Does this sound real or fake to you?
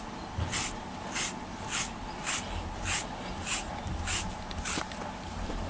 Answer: real